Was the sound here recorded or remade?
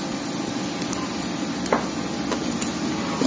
recorded